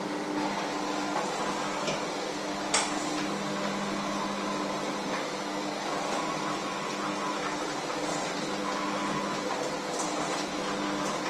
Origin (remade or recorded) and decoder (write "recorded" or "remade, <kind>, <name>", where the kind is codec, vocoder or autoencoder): recorded